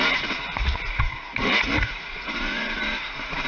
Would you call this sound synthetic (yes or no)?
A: yes